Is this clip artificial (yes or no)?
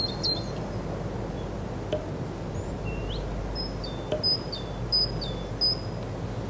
no